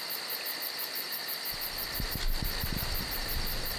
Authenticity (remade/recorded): recorded